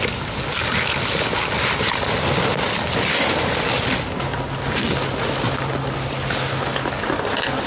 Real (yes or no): yes